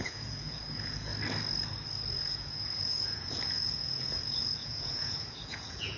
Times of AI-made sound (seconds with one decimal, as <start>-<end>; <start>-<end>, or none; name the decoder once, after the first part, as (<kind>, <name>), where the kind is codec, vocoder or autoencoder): 0.0-1.1 (vocoder, Vocos); 2.1-6.0